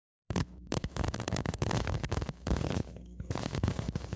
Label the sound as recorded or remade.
remade